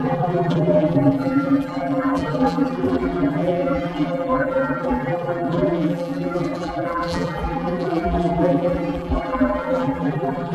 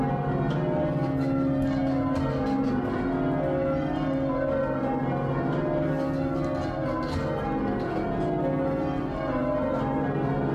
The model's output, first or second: first